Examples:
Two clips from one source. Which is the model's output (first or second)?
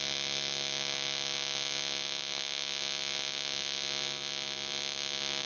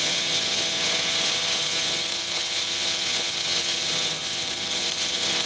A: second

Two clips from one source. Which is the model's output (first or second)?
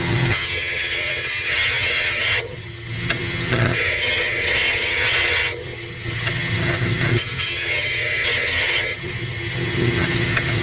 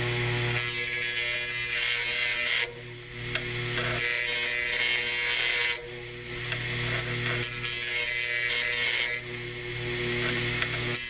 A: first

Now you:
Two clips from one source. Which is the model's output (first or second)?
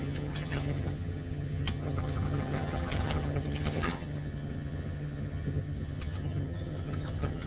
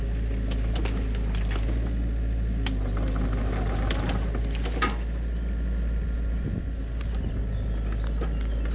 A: first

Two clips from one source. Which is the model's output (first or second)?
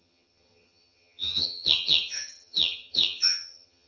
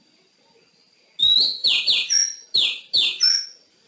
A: first